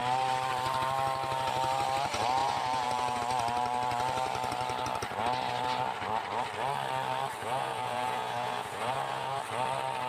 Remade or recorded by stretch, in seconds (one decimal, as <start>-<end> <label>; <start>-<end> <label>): 0.0-2.4 recorded; 2.4-3.2 remade; 3.2-7.4 recorded; 7.4-9.4 remade; 9.4-10.1 recorded

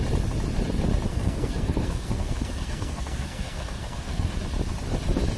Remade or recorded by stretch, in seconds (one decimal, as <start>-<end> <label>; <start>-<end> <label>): 0.0-1.1 recorded; 1.1-4.3 remade; 4.3-5.4 recorded

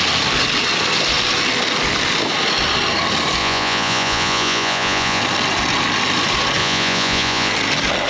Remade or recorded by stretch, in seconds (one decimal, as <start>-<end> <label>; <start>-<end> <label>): 0.0-3.4 recorded; 3.4-5.2 remade; 5.2-6.6 recorded; 6.6-7.5 remade; 7.5-8.1 recorded